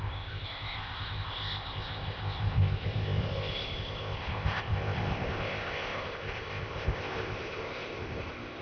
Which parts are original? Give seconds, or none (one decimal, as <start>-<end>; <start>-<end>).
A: none